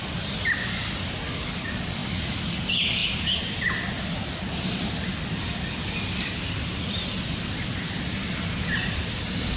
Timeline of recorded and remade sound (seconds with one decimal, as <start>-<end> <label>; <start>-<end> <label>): 0.0-9.6 recorded